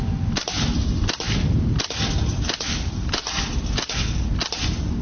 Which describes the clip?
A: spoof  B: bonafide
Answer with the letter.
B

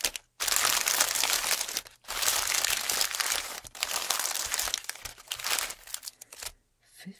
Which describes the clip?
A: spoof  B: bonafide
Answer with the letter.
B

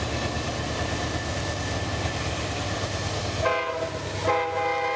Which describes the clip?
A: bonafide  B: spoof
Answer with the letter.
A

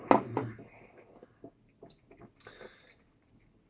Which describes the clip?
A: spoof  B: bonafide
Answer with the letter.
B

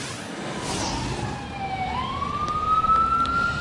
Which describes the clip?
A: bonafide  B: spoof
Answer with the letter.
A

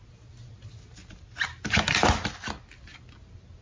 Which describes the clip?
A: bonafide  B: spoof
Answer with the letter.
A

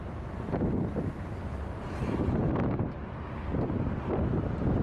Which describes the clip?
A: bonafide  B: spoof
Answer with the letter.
A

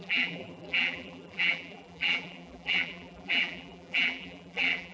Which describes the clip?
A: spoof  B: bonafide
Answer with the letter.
A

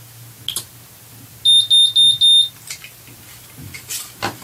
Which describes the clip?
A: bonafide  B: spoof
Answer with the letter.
A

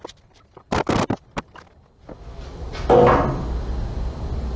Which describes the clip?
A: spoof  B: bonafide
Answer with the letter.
B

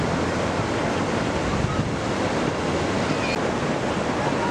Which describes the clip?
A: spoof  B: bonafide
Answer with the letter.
B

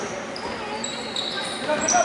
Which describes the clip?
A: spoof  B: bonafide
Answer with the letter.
A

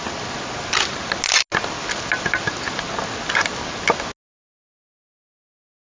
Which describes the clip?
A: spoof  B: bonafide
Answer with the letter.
B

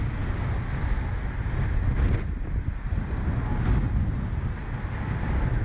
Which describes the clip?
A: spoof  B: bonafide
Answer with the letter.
B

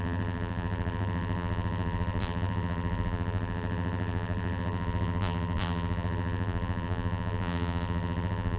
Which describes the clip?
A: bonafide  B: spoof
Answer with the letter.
B